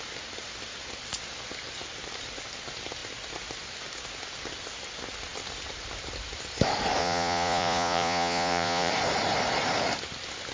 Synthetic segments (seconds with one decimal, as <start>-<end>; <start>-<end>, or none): 7.0-8.9